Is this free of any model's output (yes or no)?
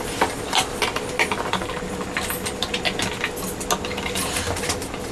yes